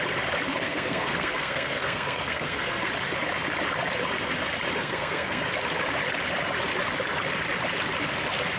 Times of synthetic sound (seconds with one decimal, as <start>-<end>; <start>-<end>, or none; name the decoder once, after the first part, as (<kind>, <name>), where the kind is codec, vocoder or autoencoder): 0.6-2.9 (codec, SNAC); 4.8-5.4